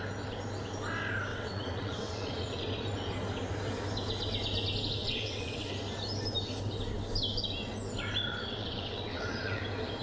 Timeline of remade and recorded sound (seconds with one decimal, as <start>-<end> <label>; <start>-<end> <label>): 0.0-1.3 recorded; 1.3-2.6 remade; 2.6-5.0 recorded; 5.0-5.7 remade; 5.7-8.3 recorded; 8.3-9.6 remade; 9.6-10.0 recorded

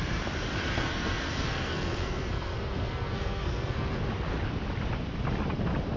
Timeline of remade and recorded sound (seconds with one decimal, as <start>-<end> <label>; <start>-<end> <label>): 0.0-0.7 recorded; 0.7-4.0 remade; 4.0-6.0 recorded

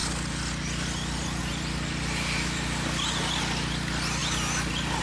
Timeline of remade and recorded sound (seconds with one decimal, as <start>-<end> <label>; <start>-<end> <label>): 0.0-5.0 recorded

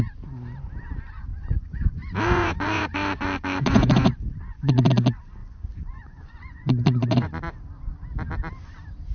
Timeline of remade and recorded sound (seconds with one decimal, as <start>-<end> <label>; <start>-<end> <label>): 0.0-1.3 recorded; 1.3-4.9 remade; 4.9-5.4 recorded; 5.4-7.4 remade; 7.4-9.1 recorded

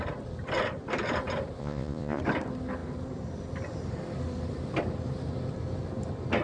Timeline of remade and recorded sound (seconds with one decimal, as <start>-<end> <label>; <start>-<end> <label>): 0.0-1.6 recorded; 1.6-2.2 remade; 2.2-6.4 recorded